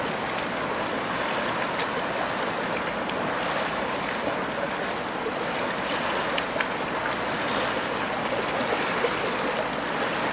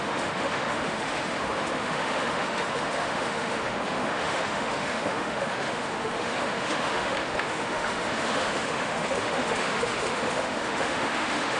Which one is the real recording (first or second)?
first